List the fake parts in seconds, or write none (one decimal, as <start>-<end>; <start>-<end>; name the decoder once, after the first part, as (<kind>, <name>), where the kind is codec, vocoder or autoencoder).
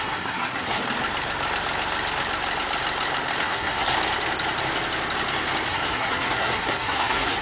0.0-0.8 (codec, SNAC); 3.4-3.9; 5.7-7.4